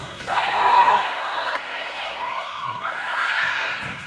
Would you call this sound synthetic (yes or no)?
yes